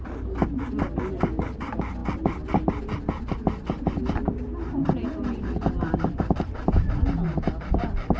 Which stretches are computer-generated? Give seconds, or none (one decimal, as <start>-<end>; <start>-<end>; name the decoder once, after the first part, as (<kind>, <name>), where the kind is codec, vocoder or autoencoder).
2.0-6.9 (vocoder, BigVGAN v2)